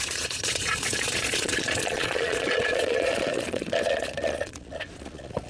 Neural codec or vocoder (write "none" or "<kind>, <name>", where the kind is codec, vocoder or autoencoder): vocoder, Vocos